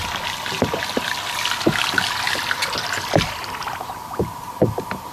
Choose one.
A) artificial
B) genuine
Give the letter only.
B